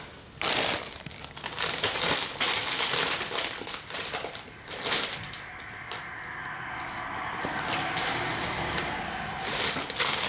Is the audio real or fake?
real